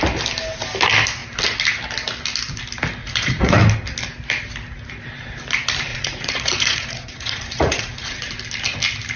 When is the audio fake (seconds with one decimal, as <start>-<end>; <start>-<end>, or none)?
3.0-3.6; 5.9-8.3